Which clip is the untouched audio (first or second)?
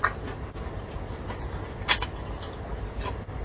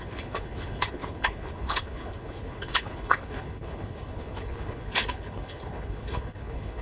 first